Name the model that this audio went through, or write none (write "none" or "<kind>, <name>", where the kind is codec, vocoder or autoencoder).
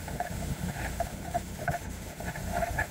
autoencoder, DAC-VAE